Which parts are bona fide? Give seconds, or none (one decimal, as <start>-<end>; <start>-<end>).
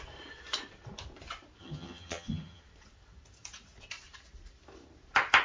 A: 0.0-1.6; 2.6-5.4